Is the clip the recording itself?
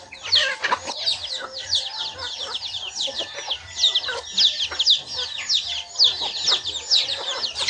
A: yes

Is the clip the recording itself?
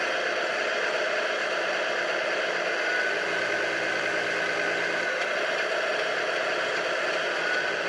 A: yes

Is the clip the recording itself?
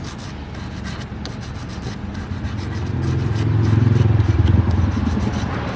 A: yes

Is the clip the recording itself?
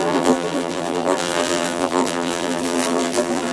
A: no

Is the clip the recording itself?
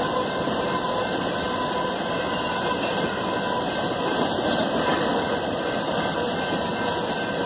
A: yes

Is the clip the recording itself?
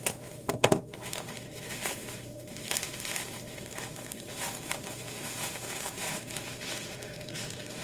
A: no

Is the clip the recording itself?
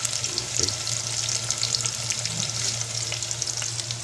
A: yes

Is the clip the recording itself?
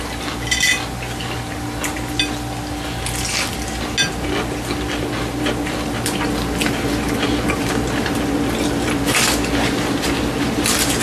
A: yes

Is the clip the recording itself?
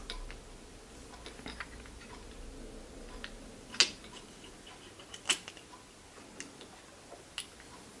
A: yes